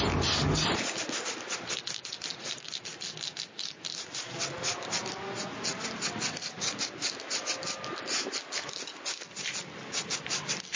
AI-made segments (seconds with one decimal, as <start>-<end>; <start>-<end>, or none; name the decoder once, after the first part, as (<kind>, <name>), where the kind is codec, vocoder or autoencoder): none